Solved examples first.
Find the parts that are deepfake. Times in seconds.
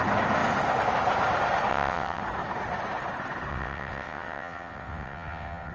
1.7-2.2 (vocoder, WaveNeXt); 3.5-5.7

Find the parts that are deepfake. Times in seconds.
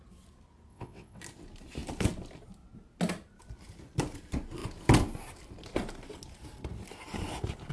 0.7-1.2 (vocoder, WaveNeXt)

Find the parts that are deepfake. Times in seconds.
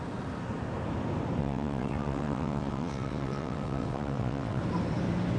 1.4-4.6 (vocoder, WaveNeXt)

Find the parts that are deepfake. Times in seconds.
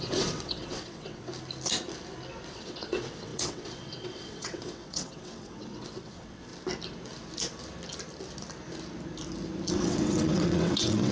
0.0-1.3 (vocoder, WaveNeXt); 2.5-6.5; 9.7-11.1